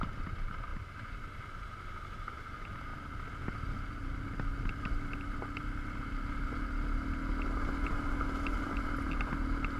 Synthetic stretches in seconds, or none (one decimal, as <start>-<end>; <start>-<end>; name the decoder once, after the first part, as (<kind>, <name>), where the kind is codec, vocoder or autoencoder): none